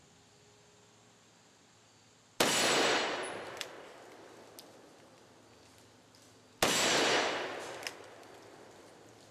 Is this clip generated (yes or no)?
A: no